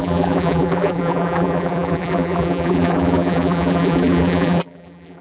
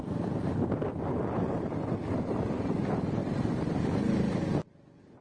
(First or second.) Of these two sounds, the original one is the second